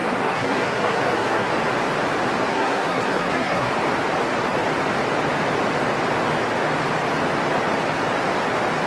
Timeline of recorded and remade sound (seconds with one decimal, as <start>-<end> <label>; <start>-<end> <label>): 0.0-1.5 remade; 1.5-2.5 recorded; 2.5-3.7 remade; 3.7-8.9 recorded